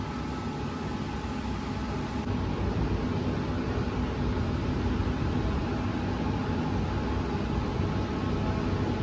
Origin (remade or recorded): recorded